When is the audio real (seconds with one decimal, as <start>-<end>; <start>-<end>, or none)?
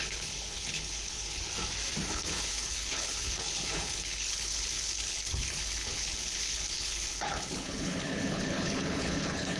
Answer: 1.4-2.1